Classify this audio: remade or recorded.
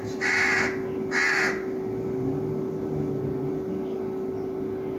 recorded